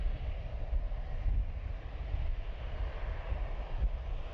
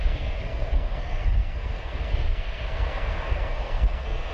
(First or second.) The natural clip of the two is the first